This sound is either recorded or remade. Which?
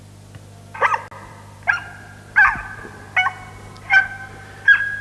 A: recorded